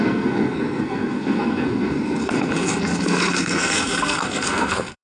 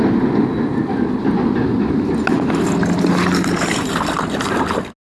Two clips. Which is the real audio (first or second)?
second